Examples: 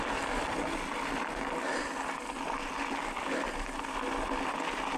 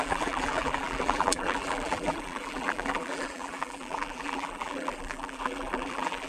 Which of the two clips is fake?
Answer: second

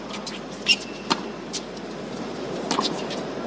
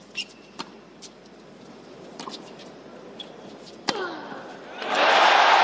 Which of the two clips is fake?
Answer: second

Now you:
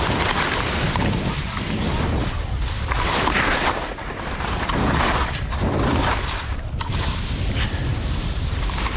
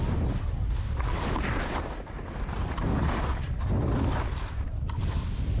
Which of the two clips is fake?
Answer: first